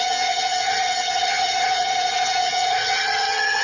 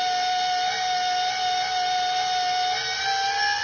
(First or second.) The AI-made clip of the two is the first